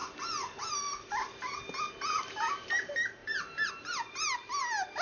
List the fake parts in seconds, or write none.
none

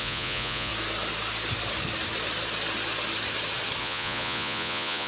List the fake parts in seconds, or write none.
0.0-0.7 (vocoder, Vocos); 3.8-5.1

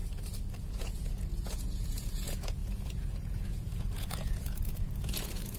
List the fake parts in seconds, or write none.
0.6-5.6 (vocoder, Vocos)

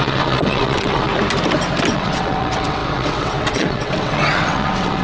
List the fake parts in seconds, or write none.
0.0-1.1 (vocoder, WaveNeXt); 1.9-5.0